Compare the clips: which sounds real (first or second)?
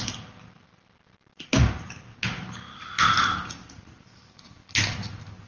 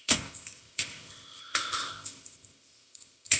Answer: first